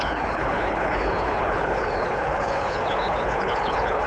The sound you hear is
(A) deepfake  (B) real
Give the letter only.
A